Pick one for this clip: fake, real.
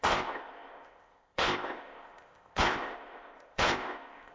fake